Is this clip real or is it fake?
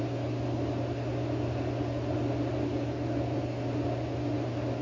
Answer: real